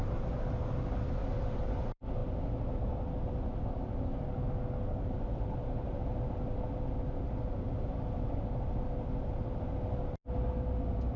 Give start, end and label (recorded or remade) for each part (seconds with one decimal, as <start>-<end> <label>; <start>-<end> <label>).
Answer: 0.0-0.5 remade; 0.5-11.2 recorded